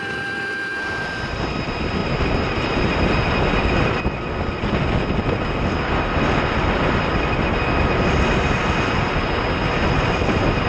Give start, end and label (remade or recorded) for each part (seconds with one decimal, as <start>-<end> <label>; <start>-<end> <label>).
0.0-2.0 recorded; 2.0-3.0 remade; 3.0-10.7 recorded